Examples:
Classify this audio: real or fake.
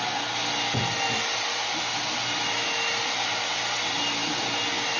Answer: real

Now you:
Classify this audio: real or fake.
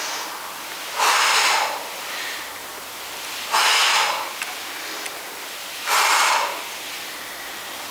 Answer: real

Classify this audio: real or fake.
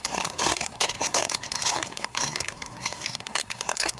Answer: fake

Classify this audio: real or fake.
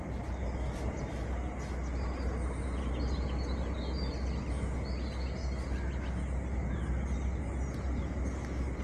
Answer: real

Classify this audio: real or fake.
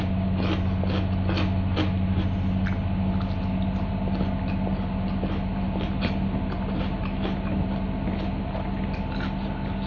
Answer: real